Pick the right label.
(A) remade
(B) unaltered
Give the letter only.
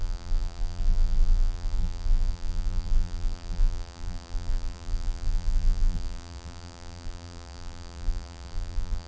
A